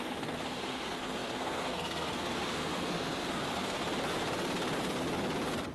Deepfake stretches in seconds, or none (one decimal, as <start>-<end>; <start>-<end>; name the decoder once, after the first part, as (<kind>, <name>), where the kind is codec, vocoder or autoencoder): 0.0-3.8 (codec, SNAC)